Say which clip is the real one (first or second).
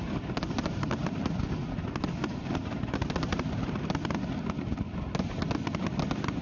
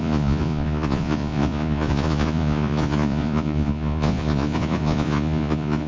first